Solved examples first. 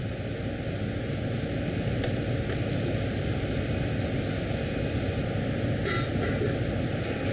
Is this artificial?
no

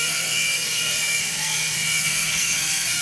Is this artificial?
yes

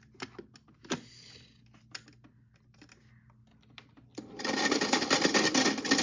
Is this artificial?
no